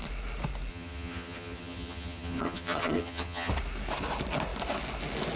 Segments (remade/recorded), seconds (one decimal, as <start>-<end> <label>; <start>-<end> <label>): 0.0-0.7 recorded; 0.7-3.5 remade; 3.5-5.4 recorded